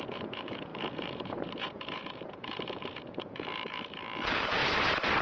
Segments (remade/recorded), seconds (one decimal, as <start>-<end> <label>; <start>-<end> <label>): 0.0-4.6 remade; 4.6-5.2 recorded